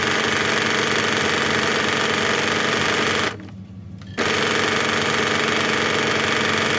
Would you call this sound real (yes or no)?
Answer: yes